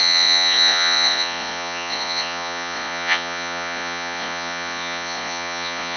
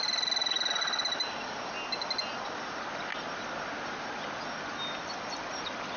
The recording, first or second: second